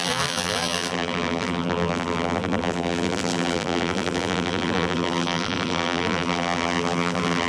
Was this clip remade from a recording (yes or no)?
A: yes